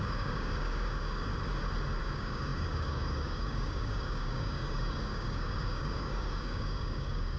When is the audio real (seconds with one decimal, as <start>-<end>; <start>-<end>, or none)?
1.3-2.0